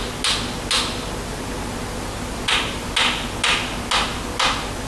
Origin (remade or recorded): recorded